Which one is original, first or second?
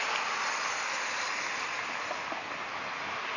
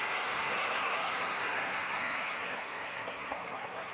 first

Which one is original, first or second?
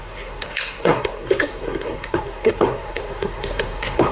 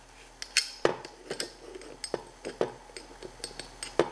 second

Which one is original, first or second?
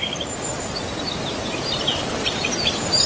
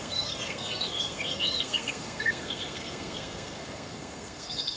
first